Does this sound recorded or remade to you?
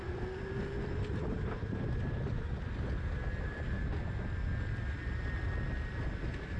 recorded